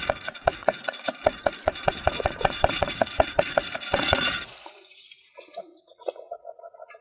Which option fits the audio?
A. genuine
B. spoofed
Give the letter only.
B